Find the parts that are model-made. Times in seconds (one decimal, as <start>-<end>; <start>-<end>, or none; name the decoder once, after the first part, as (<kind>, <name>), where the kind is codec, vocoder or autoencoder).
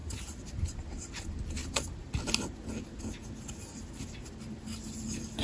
1.6-2.1 (vocoder, BigVGAN v2)